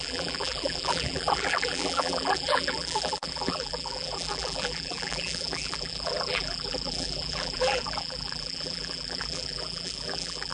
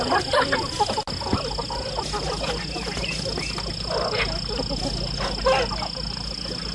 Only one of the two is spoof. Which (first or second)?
first